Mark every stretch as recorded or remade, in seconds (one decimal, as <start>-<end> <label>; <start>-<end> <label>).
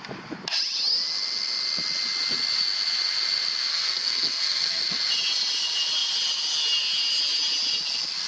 0.0-3.7 recorded; 3.7-4.8 remade; 4.8-8.3 recorded